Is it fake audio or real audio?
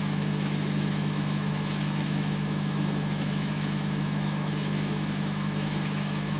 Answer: fake